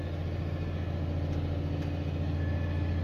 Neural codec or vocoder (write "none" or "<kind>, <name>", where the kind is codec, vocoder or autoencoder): none